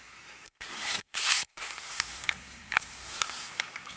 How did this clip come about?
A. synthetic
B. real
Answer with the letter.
A